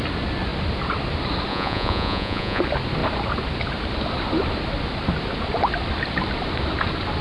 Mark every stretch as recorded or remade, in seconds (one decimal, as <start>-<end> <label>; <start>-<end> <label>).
0.0-1.5 recorded; 1.5-2.6 remade; 2.6-7.2 recorded